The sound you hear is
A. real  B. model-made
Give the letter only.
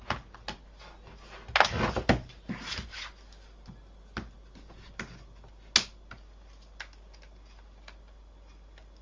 A